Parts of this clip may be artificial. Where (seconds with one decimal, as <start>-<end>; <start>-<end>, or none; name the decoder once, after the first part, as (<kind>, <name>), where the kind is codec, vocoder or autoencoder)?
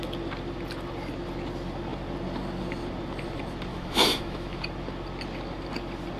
3.7-4.6 (autoencoder, DAC-VAE)